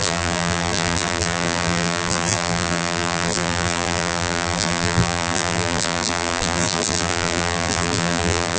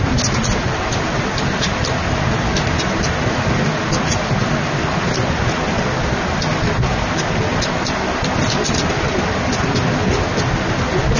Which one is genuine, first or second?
second